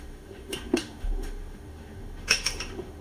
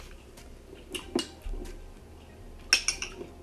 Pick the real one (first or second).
second